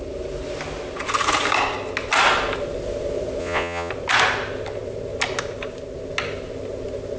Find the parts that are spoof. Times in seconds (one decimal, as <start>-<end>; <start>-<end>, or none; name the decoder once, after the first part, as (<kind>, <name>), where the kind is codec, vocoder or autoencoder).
3.4-3.9 (vocoder, Vocos)